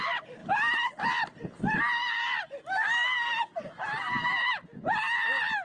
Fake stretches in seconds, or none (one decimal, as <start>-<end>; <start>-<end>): none